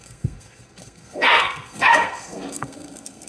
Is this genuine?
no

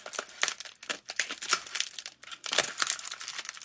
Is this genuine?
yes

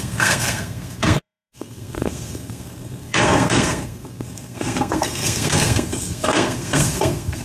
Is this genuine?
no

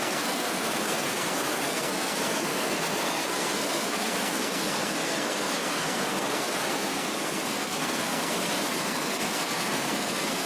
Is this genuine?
no